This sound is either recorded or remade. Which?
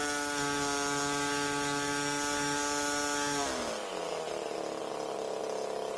recorded